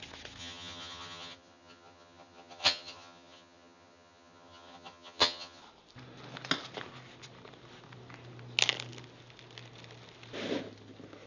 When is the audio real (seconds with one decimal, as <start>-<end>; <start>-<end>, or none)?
0.0-0.4; 5.6-11.3